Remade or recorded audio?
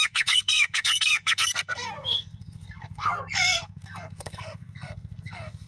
remade